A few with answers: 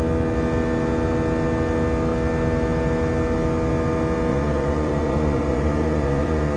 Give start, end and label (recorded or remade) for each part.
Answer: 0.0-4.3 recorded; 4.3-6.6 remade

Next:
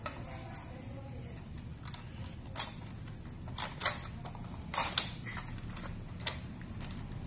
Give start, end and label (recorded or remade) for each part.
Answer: 0.0-7.3 recorded

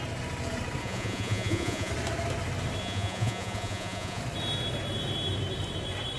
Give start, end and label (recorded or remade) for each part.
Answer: 0.0-0.8 recorded; 0.8-1.9 remade; 1.9-2.8 recorded; 2.8-4.2 remade; 4.2-6.2 recorded

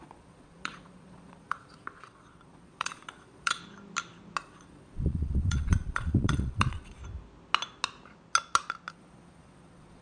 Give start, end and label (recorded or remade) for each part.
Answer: 0.0-3.6 remade; 3.6-4.4 recorded; 4.4-7.0 remade; 7.0-8.9 recorded; 8.9-10.0 remade

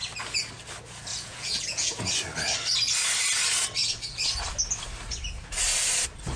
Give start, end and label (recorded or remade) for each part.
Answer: 0.0-1.1 recorded; 1.1-2.0 remade; 2.0-6.4 recorded

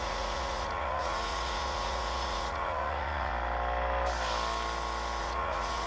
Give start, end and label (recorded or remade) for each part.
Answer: 0.0-3.3 remade; 3.3-5.2 recorded; 5.2-5.9 remade